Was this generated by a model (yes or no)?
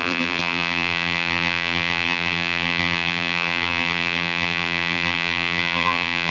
yes